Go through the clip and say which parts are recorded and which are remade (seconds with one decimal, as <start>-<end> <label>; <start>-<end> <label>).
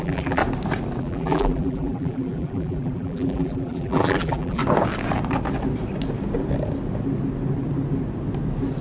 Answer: 0.0-0.4 remade; 0.4-1.0 recorded; 1.0-4.6 remade; 4.6-8.8 recorded